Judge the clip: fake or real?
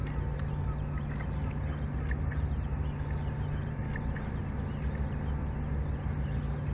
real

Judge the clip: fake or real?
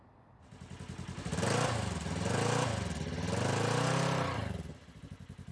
real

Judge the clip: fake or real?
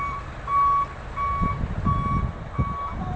real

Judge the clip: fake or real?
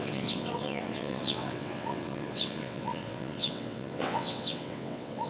fake